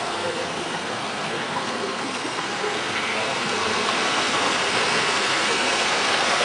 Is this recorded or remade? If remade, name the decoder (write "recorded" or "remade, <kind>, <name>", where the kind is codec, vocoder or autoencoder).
remade, codec, SNAC